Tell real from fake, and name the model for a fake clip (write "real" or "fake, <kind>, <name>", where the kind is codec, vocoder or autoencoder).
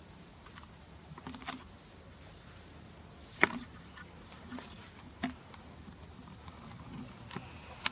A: fake, vocoder, BigVGAN v2